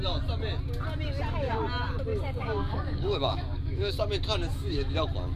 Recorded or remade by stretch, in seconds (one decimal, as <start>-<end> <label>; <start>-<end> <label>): 0.0-2.1 recorded; 2.1-3.9 remade; 3.9-4.5 recorded; 4.5-5.0 remade; 5.0-5.4 recorded

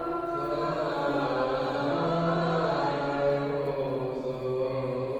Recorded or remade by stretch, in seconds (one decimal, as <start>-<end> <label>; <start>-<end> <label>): 0.0-5.2 recorded

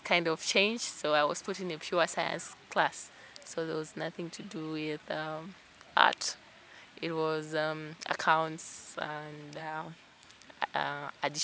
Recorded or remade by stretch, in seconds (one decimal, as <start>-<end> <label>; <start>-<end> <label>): 0.0-9.6 recorded; 9.6-10.3 remade; 10.3-11.4 recorded

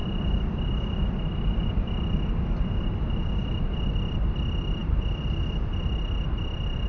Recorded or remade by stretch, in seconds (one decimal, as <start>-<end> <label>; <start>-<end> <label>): 0.0-6.9 recorded

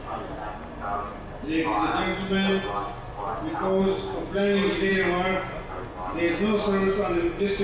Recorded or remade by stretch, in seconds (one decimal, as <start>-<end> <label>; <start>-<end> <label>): 0.0-7.6 recorded